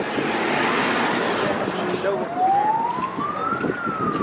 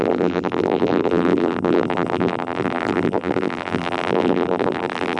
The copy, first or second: second